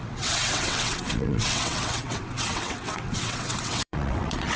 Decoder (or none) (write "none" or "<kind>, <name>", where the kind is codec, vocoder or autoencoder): vocoder, WaveNeXt